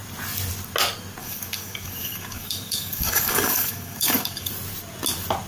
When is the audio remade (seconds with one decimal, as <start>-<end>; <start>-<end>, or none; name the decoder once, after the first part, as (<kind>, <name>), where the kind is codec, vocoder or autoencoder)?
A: 1.2-4.5 (codec, DAC)